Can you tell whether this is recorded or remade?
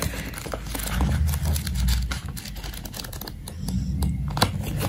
recorded